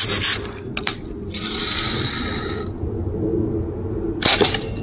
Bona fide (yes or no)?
yes